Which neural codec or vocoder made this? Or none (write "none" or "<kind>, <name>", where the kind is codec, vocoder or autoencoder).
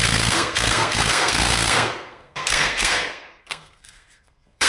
codec, SNAC